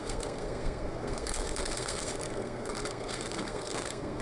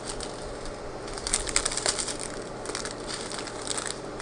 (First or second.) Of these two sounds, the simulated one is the first